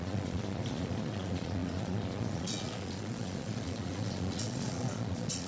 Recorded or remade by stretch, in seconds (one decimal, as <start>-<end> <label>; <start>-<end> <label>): 0.0-5.5 remade